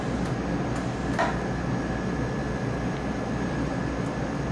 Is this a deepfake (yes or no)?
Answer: no